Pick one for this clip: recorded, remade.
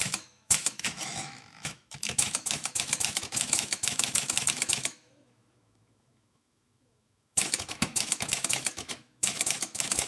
remade